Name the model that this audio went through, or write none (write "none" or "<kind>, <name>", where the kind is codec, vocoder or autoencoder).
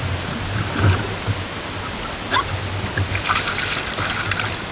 none